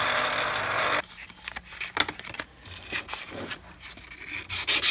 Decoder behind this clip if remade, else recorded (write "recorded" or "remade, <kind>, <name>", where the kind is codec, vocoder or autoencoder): recorded